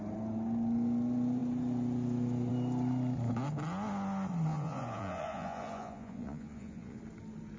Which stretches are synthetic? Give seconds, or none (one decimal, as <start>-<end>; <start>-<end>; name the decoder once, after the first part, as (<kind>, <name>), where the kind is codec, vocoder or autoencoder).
4.5-7.0 (vocoder, Vocos)